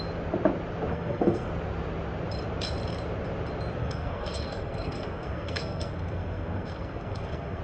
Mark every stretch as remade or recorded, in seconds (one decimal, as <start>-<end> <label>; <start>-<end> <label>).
0.0-0.9 recorded; 0.9-1.5 remade; 1.5-3.8 recorded; 3.8-7.6 remade